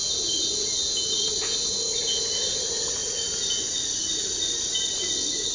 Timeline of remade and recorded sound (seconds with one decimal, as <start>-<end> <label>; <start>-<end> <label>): 0.0-5.5 recorded